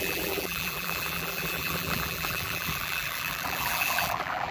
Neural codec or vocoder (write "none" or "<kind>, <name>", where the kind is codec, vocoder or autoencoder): vocoder, BigVGAN v2